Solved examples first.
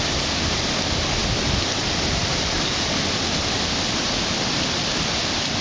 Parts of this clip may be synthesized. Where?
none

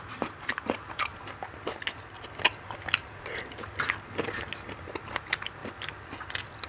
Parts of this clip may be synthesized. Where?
0.0-1.1; 5.1-5.6

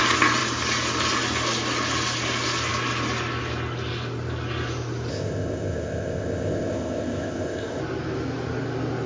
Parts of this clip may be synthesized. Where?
5.1-7.8

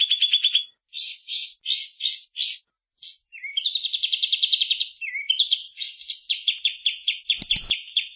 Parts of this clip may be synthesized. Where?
1.0-1.5